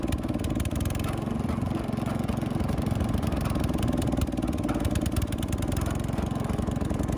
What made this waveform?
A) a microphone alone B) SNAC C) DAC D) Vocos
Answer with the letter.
A